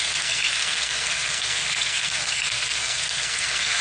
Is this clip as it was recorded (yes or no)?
no